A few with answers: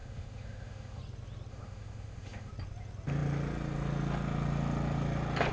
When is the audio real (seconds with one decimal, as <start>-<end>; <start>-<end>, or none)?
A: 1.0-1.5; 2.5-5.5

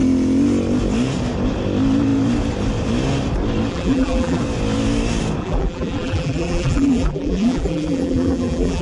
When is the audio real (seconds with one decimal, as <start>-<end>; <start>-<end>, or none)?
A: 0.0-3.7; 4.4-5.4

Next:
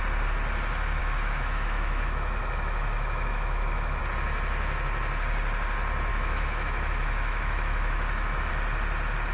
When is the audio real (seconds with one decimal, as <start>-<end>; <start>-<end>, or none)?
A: 0.0-1.0; 4.0-6.1; 8.5-9.3